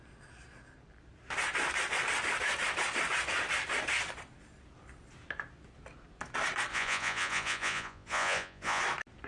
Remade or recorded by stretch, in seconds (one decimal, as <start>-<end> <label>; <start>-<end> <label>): 0.0-6.7 recorded; 6.7-8.8 remade; 8.8-9.3 recorded

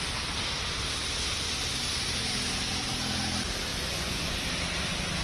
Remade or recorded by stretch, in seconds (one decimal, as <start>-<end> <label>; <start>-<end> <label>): 0.0-3.7 recorded; 3.7-4.4 remade; 4.4-5.2 recorded

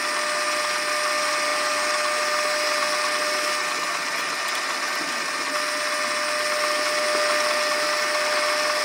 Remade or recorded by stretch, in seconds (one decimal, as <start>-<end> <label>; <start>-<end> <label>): 0.0-8.8 recorded